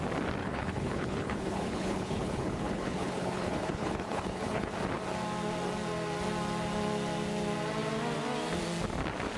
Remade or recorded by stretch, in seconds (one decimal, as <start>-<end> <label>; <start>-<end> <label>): 0.0-0.4 recorded; 0.4-4.7 remade; 4.7-9.4 recorded